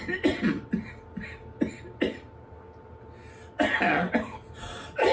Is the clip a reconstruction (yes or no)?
no